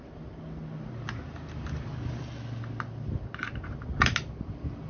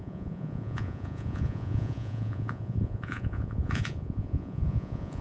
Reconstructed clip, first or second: second